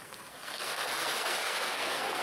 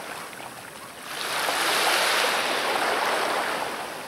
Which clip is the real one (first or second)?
second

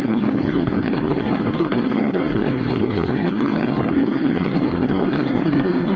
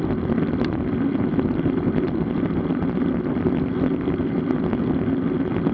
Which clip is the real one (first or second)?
second